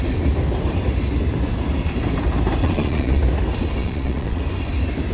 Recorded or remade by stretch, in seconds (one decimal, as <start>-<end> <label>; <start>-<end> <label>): 0.0-2.6 recorded; 2.6-3.2 remade; 3.2-3.8 recorded; 3.8-4.4 remade; 4.4-5.1 recorded